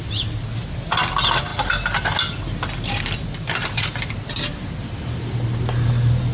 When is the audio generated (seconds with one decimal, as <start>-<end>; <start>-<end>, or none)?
none